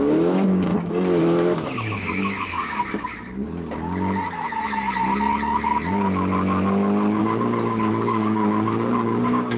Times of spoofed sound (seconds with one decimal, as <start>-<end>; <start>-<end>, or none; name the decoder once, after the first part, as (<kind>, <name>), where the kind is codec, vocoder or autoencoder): 0.0-0.7 (codec, DAC); 1.2-3.1; 7.2-9.6